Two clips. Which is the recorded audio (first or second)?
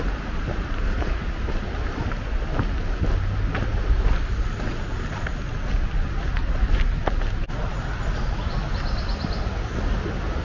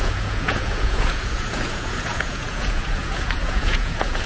first